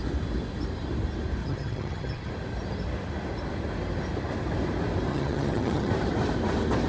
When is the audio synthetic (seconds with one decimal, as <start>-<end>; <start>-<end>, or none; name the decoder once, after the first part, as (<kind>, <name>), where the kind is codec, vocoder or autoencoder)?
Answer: 1.4-2.3 (vocoder, HiFi-GAN); 5.1-5.9